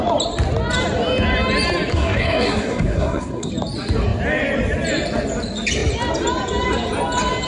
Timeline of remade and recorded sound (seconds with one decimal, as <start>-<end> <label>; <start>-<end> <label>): 0.0-1.9 recorded; 1.9-3.5 remade; 3.5-7.5 recorded